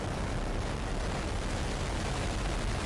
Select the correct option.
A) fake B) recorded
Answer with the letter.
B